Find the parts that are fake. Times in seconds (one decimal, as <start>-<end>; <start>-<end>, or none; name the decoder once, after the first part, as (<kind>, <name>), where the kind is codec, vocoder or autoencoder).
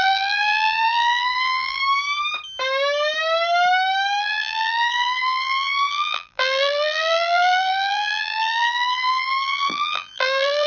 0.0-1.8 (vocoder, BigVGAN v2); 4.2-10.7